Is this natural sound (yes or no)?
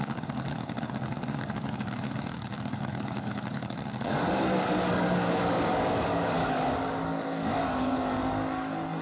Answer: no